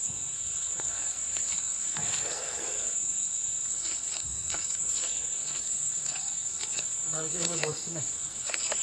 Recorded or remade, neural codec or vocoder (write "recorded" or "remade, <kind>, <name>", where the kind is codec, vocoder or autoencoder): remade, codec, SNAC